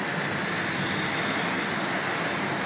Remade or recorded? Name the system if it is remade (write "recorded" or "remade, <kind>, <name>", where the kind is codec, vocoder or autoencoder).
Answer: recorded